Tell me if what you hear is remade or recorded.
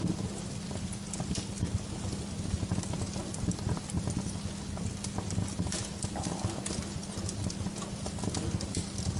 recorded